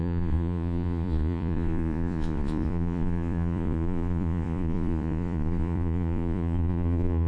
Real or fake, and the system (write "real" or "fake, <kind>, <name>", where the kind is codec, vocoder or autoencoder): fake, vocoder, Vocos